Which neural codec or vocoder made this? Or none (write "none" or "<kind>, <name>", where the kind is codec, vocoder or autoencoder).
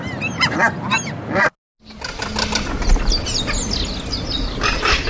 none